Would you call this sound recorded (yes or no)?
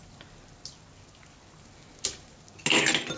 yes